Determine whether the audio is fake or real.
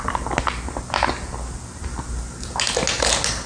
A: real